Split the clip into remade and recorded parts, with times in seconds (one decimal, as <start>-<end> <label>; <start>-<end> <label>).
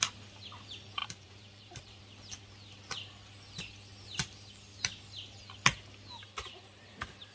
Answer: 0.0-1.0 recorded; 1.0-2.0 remade; 2.0-7.3 recorded